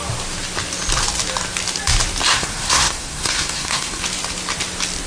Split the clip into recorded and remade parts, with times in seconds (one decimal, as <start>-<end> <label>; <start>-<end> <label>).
0.0-2.3 recorded; 2.3-4.0 remade; 4.0-5.1 recorded